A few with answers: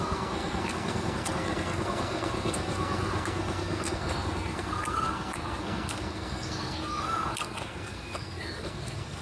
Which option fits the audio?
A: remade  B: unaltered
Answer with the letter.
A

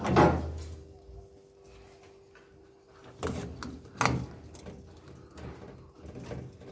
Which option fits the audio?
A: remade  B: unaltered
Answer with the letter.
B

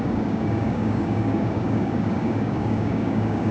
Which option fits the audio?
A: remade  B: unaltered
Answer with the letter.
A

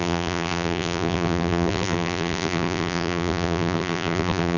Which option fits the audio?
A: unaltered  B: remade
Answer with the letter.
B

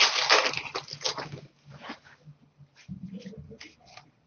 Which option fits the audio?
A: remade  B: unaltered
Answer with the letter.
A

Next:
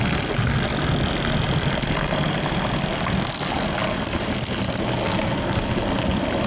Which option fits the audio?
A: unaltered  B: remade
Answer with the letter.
A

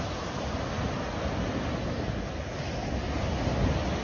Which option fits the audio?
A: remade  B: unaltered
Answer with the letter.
B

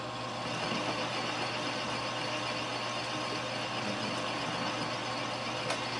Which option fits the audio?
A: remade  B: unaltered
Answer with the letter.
B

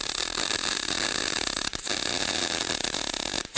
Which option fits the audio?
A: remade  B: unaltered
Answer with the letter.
A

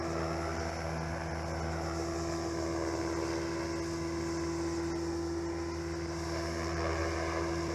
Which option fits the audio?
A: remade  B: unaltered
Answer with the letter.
B